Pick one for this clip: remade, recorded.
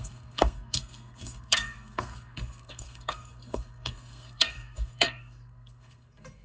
remade